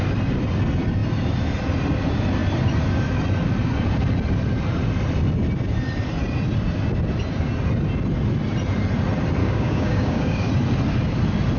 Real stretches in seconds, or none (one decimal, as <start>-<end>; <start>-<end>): 0.0-9.4; 10.5-11.6